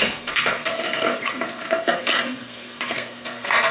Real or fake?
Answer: fake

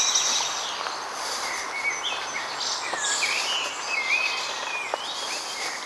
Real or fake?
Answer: real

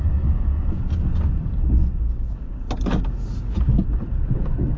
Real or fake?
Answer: real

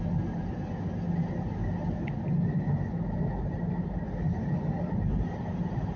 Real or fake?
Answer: real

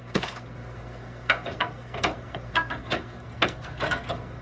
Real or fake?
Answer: fake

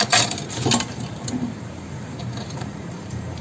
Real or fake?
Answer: fake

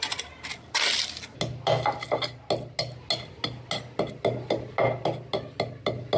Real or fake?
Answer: real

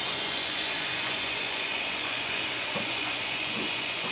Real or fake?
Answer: fake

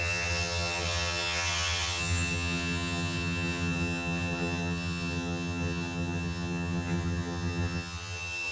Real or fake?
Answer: fake